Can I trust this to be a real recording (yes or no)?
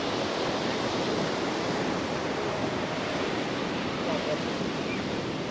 yes